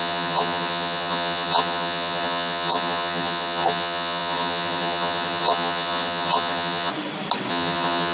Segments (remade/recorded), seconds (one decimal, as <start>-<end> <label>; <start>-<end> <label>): 0.0-6.9 remade; 6.9-7.5 recorded; 7.5-8.1 remade